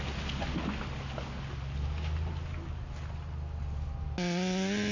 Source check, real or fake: real